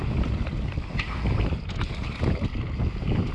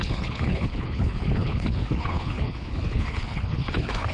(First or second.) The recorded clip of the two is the first